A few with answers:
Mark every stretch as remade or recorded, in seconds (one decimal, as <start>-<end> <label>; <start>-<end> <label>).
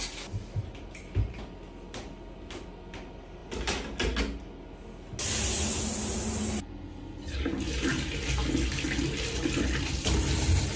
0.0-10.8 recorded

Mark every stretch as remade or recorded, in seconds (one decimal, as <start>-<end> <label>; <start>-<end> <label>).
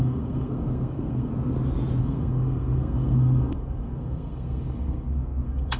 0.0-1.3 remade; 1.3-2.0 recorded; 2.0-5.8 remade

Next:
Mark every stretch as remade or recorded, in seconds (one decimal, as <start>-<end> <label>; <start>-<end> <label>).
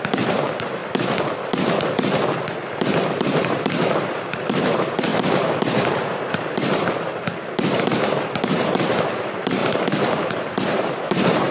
0.0-0.8 remade; 0.8-3.1 recorded; 3.1-11.5 remade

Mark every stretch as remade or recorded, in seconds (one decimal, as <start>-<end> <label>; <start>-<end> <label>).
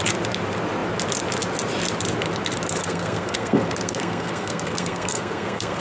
0.0-2.8 recorded; 2.8-5.8 remade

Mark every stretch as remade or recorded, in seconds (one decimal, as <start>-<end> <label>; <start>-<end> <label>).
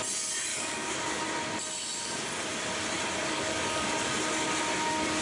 0.0-0.5 recorded; 0.5-1.2 remade; 1.2-3.2 recorded; 3.2-4.1 remade; 4.1-5.2 recorded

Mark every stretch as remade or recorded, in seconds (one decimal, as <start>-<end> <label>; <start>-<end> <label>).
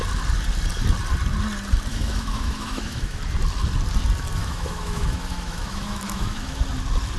0.0-1.9 recorded; 1.9-3.2 remade; 3.2-4.4 recorded; 4.4-6.6 remade; 6.6-7.2 recorded